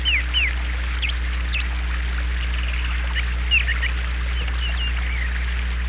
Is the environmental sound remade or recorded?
recorded